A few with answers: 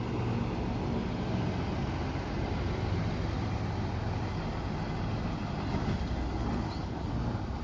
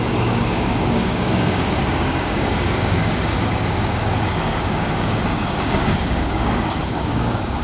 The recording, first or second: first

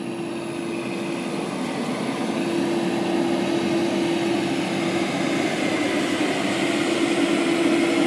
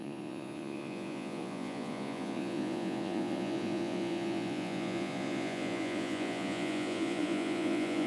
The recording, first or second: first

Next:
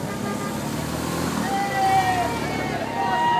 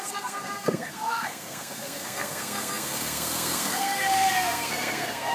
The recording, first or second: first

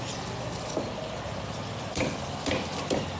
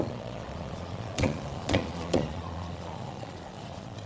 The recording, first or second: first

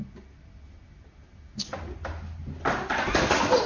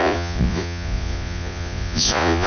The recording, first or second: first